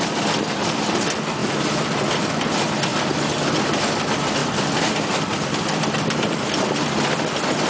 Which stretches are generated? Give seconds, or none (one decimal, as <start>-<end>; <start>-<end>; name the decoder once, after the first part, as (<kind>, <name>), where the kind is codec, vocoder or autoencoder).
2.9-3.9 (vocoder, BigVGAN v2)

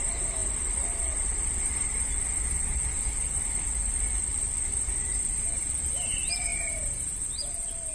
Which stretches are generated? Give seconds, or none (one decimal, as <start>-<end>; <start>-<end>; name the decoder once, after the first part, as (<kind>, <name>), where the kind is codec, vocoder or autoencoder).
0.0-0.4 (vocoder, BigVGAN v2); 1.6-2.1; 5.3-7.9

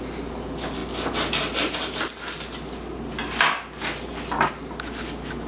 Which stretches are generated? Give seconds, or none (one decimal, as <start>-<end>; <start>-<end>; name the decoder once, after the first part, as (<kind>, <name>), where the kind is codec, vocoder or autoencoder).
none